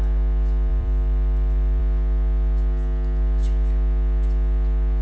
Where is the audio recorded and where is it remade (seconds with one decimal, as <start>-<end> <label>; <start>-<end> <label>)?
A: 0.0-0.7 recorded; 0.7-1.8 remade; 1.8-5.0 recorded